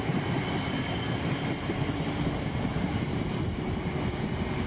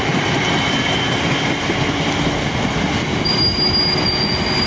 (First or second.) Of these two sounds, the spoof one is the first